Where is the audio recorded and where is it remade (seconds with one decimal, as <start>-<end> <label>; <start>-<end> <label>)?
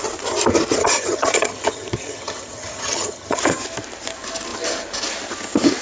0.0-0.8 recorded; 0.8-3.4 remade; 3.4-5.8 recorded